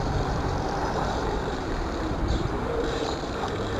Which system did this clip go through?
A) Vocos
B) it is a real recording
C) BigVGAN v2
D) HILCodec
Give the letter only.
C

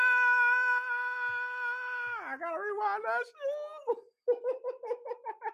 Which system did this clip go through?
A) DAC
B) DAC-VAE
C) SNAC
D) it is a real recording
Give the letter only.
D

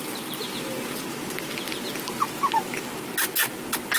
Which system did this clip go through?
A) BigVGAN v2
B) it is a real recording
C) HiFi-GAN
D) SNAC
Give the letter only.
B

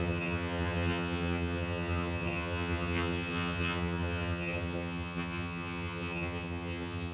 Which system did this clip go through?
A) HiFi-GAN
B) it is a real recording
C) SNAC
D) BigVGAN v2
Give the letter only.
A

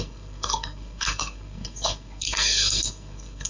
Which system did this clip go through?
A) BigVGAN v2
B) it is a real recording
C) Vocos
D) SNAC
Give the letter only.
D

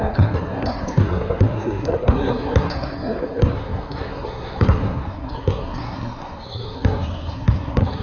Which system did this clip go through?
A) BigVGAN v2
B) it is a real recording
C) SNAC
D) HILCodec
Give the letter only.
C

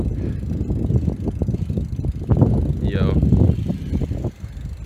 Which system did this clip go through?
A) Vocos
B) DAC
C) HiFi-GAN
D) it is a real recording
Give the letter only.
D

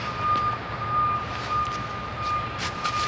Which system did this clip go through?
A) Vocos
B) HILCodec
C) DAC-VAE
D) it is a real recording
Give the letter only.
D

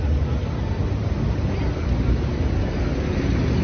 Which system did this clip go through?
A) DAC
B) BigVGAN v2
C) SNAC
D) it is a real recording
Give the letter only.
D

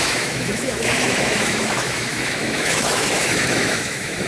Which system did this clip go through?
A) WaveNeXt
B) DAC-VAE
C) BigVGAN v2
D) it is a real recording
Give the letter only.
B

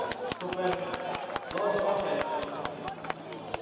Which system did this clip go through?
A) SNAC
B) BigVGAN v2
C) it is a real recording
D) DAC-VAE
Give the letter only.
C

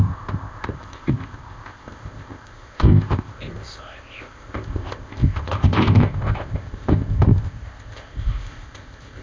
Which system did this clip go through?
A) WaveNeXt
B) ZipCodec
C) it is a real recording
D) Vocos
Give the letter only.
B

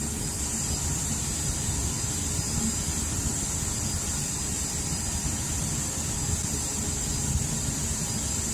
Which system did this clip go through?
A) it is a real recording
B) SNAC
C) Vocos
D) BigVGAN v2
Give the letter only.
A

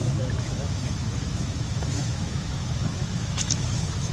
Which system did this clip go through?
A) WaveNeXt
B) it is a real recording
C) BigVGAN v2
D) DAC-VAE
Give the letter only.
D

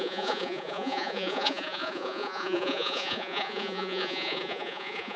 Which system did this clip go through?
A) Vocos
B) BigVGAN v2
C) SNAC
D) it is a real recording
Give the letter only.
A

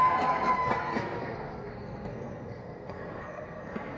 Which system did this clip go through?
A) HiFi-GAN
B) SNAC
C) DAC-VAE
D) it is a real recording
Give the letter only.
B